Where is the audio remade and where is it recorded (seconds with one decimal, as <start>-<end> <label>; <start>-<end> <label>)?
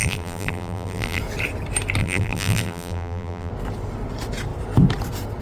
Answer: 0.0-1.2 remade; 1.2-2.0 recorded; 2.0-3.5 remade; 3.5-5.4 recorded